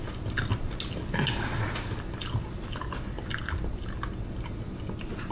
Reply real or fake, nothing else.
real